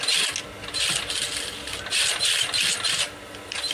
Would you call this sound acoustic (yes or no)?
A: yes